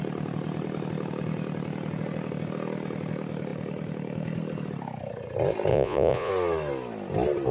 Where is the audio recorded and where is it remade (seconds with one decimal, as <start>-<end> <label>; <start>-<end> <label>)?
0.0-5.7 recorded; 5.7-6.3 remade; 6.3-7.5 recorded